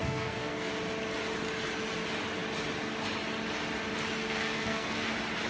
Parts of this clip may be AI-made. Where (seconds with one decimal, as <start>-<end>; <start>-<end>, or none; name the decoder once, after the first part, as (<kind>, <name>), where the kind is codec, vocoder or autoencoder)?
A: 0.0-0.7 (codec, SNAC); 4.2-5.1